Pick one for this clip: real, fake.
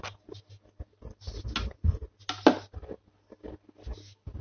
real